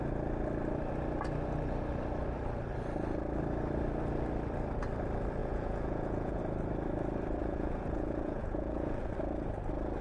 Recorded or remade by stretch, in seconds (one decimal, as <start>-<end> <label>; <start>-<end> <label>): 0.0-5.4 recorded; 5.4-6.4 remade; 6.4-7.4 recorded; 7.4-9.1 remade; 9.1-10.0 recorded